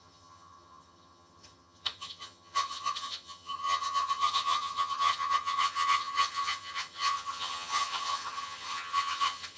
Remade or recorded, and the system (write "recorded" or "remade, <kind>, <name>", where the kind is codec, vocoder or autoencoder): remade, vocoder, HiFi-GAN